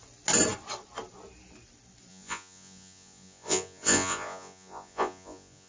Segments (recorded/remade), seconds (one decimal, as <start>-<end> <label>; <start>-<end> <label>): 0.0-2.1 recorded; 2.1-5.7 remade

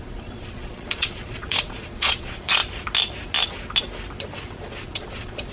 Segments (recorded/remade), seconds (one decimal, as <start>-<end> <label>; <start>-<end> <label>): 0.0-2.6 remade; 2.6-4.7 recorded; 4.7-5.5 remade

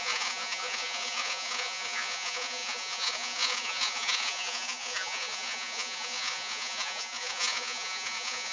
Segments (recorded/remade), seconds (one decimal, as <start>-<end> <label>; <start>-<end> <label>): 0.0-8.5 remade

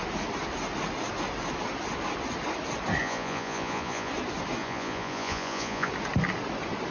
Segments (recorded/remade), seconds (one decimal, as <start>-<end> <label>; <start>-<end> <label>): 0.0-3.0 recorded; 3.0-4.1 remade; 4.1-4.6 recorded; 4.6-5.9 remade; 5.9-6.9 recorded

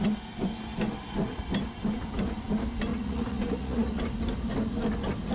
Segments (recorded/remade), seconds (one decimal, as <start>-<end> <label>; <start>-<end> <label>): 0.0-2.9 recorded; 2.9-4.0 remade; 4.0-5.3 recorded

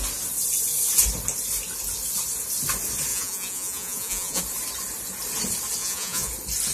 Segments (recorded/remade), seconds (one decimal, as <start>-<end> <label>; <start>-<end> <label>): 0.0-3.1 recorded; 3.1-4.4 remade; 4.4-5.8 recorded; 5.8-6.3 remade; 6.3-6.7 recorded

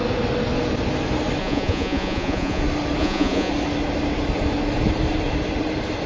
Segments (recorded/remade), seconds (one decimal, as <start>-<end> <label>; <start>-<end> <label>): 0.0-1.4 recorded; 1.4-2.6 remade; 2.6-3.0 recorded; 3.0-3.5 remade; 3.5-6.1 recorded

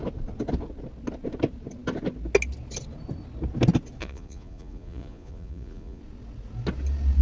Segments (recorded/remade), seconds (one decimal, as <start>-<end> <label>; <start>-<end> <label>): 0.0-4.0 recorded; 4.0-6.0 remade; 6.0-7.2 recorded